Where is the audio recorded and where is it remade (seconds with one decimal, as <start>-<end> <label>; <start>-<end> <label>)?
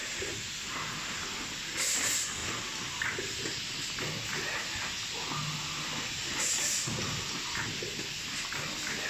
0.0-9.1 recorded